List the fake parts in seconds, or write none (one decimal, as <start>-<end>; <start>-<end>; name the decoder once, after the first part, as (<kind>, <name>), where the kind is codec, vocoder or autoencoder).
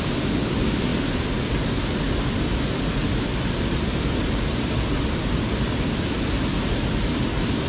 none